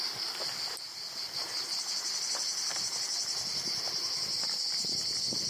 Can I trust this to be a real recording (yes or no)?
yes